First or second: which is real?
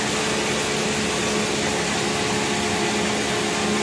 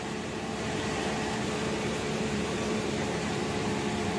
first